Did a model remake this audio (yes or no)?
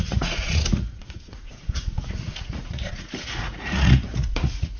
yes